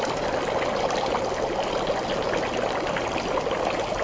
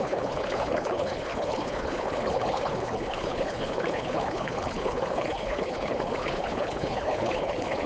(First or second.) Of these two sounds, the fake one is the second